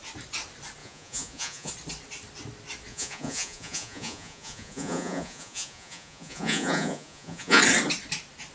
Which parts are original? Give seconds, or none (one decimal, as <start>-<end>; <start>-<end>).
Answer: 0.0-0.8; 1.7-2.9; 7.6-8.5